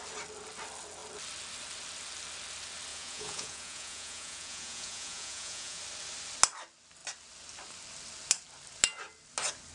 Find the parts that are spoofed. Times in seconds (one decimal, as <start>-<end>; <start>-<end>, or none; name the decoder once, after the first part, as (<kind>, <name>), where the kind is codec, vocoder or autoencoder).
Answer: 2.9-5.8 (vocoder, Vocos)